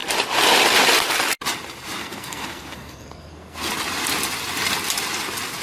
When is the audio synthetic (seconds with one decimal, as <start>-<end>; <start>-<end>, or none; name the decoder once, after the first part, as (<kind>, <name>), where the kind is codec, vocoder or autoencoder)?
2.0-3.7 (codec, SNAC)